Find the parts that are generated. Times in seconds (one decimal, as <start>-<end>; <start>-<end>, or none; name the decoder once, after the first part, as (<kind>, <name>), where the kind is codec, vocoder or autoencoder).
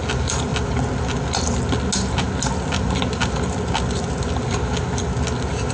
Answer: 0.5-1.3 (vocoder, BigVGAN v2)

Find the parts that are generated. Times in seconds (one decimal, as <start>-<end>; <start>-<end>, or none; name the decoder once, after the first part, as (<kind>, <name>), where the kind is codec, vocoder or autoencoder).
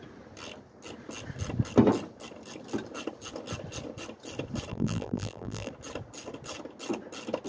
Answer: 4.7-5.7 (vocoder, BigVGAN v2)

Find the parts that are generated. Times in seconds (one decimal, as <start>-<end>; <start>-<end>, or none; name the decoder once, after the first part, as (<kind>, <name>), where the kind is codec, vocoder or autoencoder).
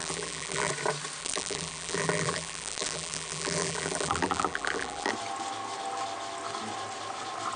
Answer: 0.0-0.7 (vocoder, BigVGAN v2); 1.2-5.1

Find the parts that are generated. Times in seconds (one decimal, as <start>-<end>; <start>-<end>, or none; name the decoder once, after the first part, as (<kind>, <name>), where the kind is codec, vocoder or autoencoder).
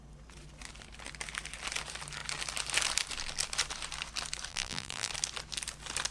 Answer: 4.5-5.1 (vocoder, BigVGAN v2)